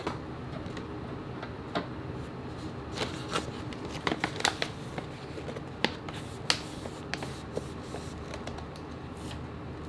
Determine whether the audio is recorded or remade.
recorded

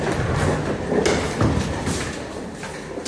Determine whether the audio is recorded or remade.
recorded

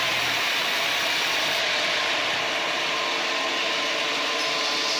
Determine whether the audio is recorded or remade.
recorded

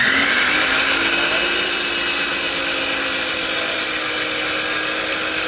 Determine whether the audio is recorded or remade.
recorded